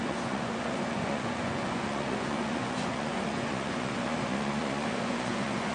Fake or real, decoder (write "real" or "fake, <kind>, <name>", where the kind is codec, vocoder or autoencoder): fake, vocoder, Vocos